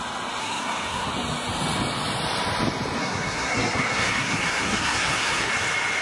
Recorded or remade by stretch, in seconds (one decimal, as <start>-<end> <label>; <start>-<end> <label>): 0.0-0.4 recorded; 0.4-1.1 remade; 1.1-3.0 recorded; 3.0-5.5 remade; 5.5-6.0 recorded